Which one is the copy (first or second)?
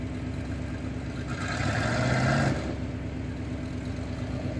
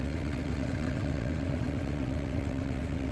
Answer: second